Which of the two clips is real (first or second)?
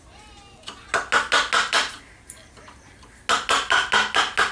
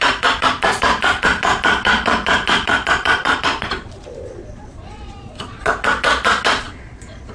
first